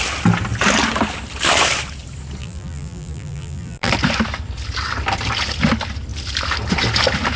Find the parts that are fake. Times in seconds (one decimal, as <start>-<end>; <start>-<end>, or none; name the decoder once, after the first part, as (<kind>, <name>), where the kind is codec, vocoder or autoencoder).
2.4-3.9 (vocoder, BigVGAN v2)

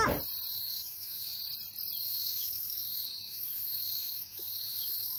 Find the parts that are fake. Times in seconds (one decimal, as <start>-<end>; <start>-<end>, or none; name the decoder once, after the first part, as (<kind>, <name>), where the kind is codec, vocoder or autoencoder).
0.5-1.4 (autoencoder, DAC-VAE); 2.0-5.2

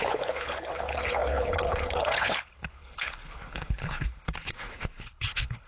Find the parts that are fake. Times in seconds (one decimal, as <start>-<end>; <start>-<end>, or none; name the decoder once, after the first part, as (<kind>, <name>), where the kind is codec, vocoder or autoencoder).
0.0-5.7 (codec, HILCodec)

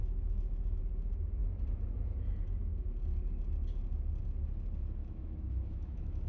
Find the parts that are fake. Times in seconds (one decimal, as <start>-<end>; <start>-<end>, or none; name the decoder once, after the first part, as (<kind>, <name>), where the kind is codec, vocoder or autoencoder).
0.0-0.8 (autoencoder, DAC-VAE); 5.0-6.3

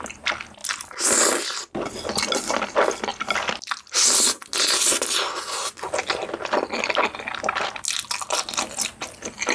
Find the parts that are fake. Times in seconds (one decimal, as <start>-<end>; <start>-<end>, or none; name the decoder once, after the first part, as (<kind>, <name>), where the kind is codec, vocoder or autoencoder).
none

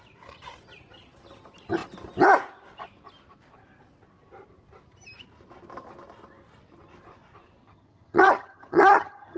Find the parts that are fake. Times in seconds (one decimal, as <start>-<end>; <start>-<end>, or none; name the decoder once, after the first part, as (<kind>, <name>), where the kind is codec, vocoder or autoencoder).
7.6-9.4 (vocoder, HiFi-GAN)

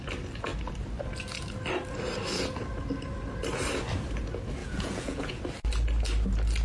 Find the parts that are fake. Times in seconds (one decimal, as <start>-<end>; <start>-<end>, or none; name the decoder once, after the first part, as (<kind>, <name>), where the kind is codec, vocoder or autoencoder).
4.6-5.4 (vocoder, Vocos)